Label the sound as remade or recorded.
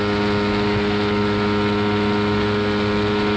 recorded